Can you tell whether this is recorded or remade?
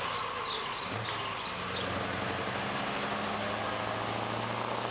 recorded